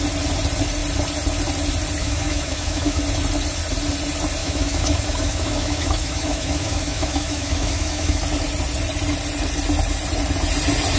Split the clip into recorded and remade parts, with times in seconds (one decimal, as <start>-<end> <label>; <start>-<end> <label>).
0.0-2.0 recorded; 2.0-3.0 remade; 3.0-4.4 recorded; 4.4-8.2 remade; 8.2-11.0 recorded